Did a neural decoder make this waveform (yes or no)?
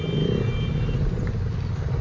no